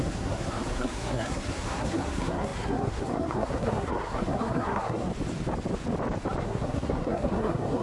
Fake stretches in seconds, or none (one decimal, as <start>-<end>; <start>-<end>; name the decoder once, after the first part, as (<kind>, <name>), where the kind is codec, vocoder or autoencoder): 0.0-5.1 (codec, SNAC); 6.4-7.8